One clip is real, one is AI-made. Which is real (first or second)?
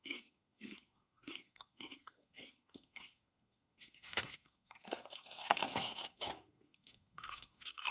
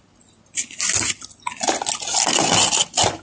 second